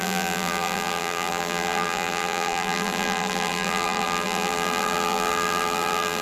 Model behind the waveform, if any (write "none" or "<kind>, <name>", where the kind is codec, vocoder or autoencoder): vocoder, BigVGAN v2